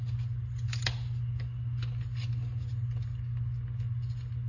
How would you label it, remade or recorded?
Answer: recorded